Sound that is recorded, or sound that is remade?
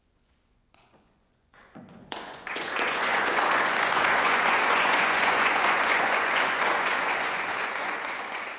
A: remade